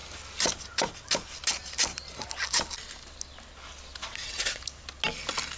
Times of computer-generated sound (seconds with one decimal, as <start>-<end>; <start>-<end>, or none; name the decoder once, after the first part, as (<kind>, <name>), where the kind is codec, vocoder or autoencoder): 4.0-4.6 (vocoder, WaveNeXt)